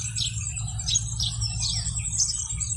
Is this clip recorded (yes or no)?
yes